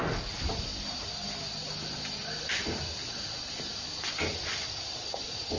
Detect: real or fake real